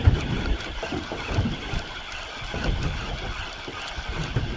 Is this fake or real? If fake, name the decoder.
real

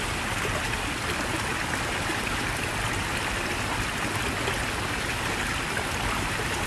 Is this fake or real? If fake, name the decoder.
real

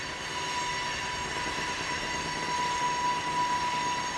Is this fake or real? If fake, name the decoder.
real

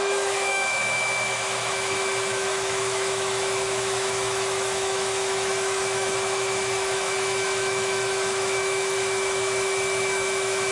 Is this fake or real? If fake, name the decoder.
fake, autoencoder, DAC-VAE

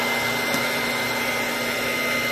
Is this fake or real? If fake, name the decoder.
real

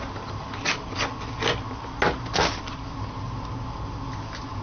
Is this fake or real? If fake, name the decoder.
real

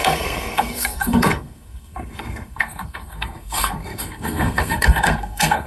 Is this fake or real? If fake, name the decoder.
fake, codec, SNAC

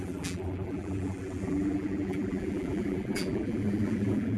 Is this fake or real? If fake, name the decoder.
fake, vocoder, BigVGAN v2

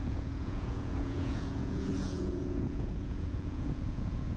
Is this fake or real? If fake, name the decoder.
fake, vocoder, Vocos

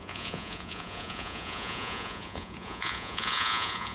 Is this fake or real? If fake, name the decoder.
fake, vocoder, Vocos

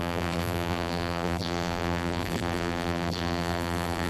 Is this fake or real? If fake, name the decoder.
fake, vocoder, BigVGAN v2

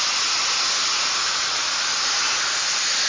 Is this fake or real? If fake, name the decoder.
real